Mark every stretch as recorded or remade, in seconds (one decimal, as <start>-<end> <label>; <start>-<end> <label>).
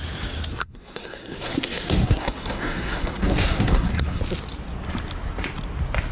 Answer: 0.0-0.5 recorded; 0.5-4.2 remade; 4.2-6.1 recorded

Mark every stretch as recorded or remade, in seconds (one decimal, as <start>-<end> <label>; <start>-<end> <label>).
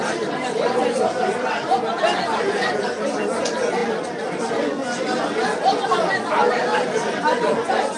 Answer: 0.0-8.0 recorded